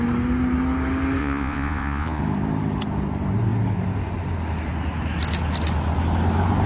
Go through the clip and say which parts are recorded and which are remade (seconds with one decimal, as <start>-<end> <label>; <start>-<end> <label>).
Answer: 0.0-1.2 recorded; 1.2-2.2 remade; 2.2-6.7 recorded